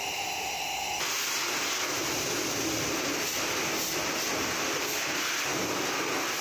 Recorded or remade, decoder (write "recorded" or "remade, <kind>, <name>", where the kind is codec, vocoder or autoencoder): recorded